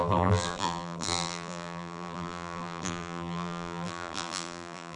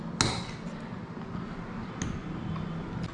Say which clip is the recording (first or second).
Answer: second